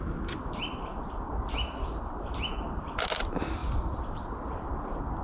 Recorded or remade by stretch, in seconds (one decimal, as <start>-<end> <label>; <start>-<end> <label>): 0.0-3.6 recorded; 3.6-4.7 remade; 4.7-5.2 recorded